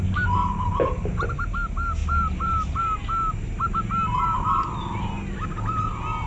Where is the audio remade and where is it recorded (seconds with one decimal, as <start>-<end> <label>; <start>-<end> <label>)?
0.0-0.4 recorded; 0.4-1.3 remade; 1.3-2.0 recorded; 2.0-2.8 remade; 2.8-6.3 recorded